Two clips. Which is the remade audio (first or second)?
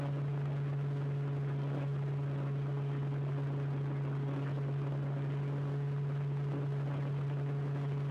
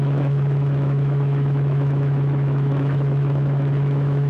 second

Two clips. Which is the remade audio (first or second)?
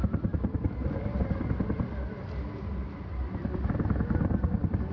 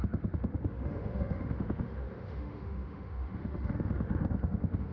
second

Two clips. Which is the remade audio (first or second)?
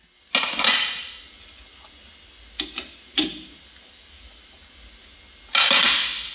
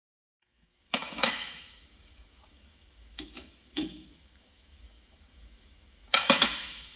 second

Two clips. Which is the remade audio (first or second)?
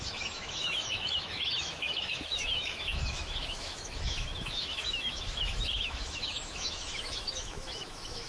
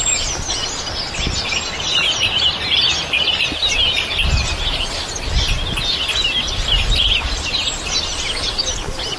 first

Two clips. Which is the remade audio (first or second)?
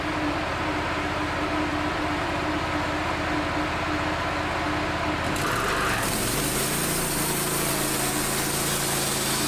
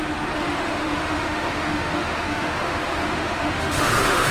second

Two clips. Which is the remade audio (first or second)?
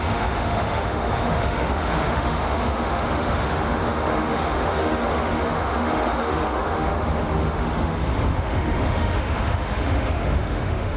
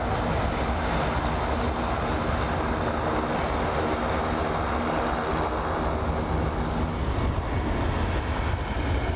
first